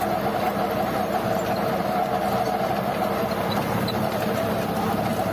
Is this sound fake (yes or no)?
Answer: no